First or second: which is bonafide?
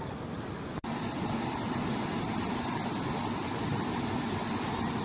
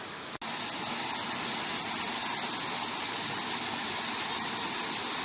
second